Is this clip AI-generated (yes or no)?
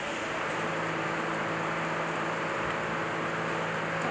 no